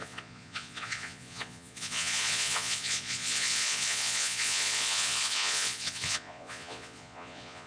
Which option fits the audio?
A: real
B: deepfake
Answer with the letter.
B